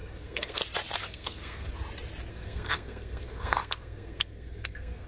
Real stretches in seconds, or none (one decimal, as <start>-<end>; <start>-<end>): 0.6-1.0; 1.7-2.3